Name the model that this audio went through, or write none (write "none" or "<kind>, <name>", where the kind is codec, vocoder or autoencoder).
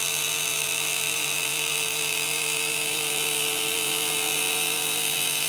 vocoder, BigVGAN v2